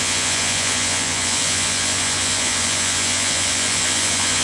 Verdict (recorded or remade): remade